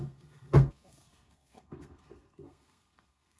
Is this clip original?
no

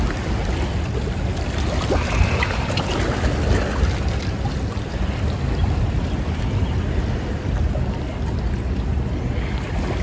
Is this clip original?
yes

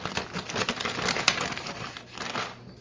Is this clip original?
yes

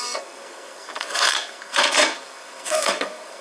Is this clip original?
no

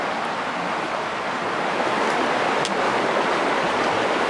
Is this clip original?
yes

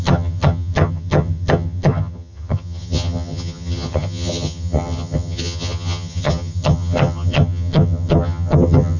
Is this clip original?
no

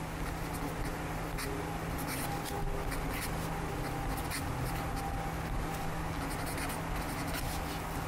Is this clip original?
yes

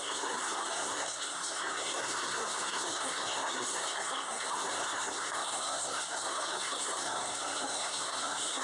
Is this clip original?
no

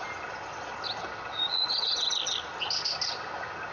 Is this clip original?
yes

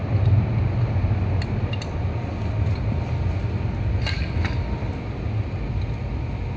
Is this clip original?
yes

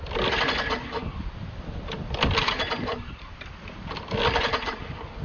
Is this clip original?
yes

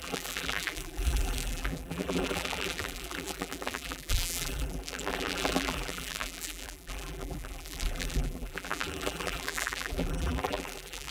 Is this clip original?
no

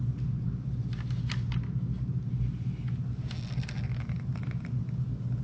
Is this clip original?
yes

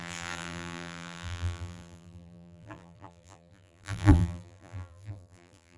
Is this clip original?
no